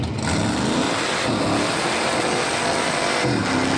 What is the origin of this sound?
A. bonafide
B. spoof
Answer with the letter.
A